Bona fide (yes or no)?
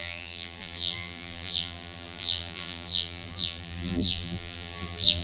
no